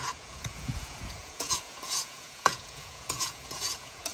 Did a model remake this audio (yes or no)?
yes